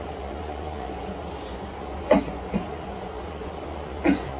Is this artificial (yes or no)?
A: yes